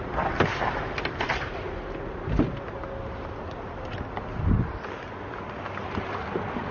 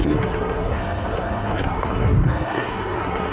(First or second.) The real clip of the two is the first